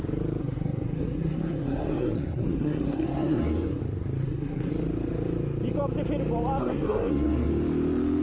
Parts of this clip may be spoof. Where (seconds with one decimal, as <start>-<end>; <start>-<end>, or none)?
0.4-3.8; 4.2-4.7; 6.6-7.5